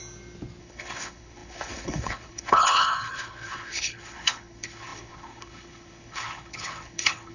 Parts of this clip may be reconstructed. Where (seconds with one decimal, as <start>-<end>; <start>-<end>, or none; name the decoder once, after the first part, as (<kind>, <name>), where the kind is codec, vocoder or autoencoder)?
0.6-7.3 (codec, HILCodec)